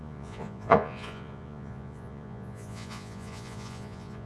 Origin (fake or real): fake